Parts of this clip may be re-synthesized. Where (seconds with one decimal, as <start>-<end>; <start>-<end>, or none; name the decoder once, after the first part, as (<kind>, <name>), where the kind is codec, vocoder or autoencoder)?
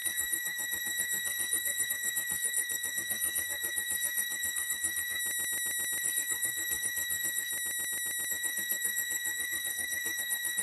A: 0.0-5.2 (codec, SNAC); 6.0-7.5; 8.3-10.6